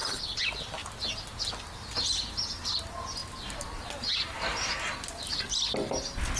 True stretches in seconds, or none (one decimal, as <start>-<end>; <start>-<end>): 0.0-6.4